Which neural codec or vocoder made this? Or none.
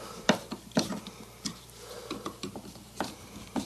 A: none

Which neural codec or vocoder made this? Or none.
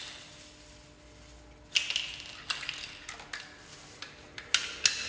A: none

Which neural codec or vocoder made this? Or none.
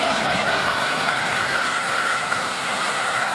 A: codec, SNAC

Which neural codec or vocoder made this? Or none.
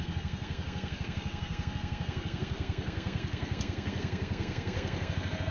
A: codec, SNAC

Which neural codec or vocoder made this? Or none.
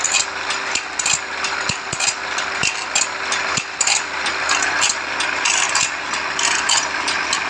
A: none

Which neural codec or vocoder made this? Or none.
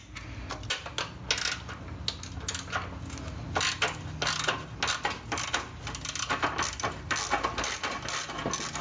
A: none